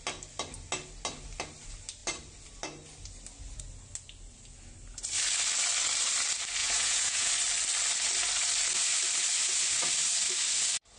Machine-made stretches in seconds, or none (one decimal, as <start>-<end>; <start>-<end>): 6.6-7.3